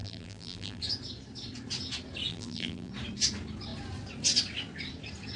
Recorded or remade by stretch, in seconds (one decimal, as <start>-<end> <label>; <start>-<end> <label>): 0.0-0.8 remade; 0.8-2.3 recorded; 2.3-2.9 remade; 2.9-5.4 recorded